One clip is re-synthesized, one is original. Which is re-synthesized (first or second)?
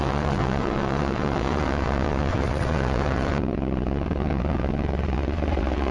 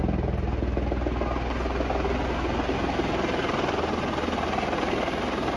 first